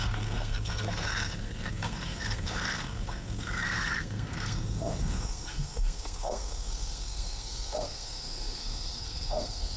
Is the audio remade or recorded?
remade